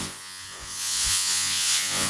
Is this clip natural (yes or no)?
no